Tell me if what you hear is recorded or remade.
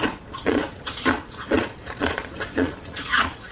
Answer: remade